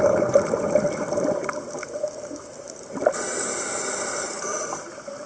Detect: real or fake real